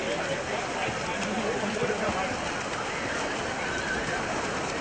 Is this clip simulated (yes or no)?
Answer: no